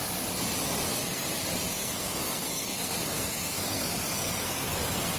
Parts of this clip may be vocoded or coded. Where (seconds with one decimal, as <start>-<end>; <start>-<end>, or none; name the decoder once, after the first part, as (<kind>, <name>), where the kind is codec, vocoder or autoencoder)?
0.9-1.4 (codec, SNAC); 1.8-5.2